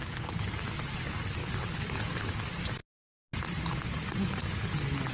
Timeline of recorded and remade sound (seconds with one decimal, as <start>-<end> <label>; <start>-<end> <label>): 0.0-0.5 remade; 0.5-1.4 recorded; 1.4-2.3 remade; 2.3-5.1 recorded